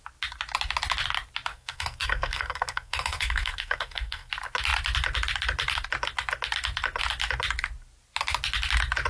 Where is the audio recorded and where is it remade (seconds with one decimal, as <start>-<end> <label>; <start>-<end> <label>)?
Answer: 0.0-1.5 recorded; 1.5-4.3 remade; 4.3-9.1 recorded